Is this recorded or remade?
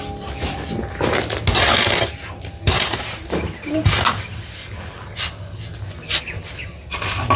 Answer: recorded